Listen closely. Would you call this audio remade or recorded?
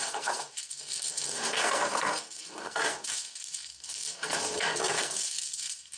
remade